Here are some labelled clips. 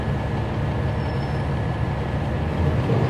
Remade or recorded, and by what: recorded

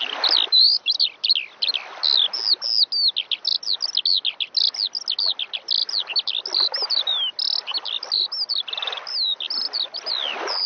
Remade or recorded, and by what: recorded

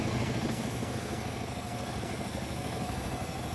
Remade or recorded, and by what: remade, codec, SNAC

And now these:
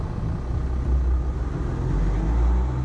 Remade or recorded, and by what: recorded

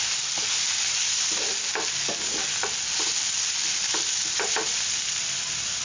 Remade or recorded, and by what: recorded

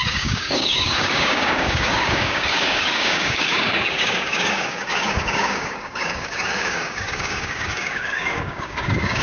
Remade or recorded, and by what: remade, codec, DAC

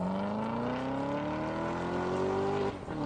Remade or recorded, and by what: recorded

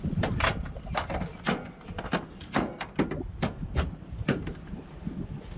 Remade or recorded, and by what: recorded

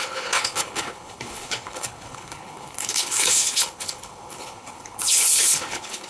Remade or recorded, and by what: remade, codec, HILCodec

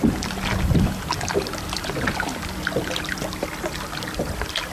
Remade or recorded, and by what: recorded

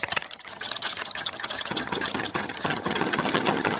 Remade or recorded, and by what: remade, vocoder, HiFi-GAN